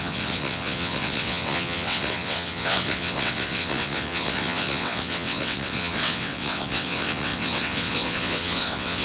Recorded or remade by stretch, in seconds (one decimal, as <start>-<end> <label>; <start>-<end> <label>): 0.0-9.0 remade